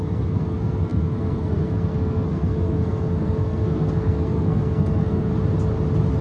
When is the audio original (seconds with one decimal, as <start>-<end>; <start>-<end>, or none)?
5.3-6.2